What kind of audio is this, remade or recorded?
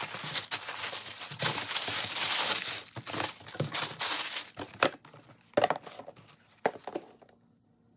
recorded